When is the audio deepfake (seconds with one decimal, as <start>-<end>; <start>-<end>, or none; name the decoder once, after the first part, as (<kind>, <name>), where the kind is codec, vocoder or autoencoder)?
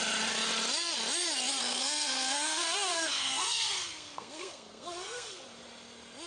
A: 1.6-5.4 (codec, SNAC)